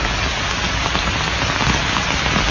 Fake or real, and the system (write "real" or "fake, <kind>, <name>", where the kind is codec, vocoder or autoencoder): real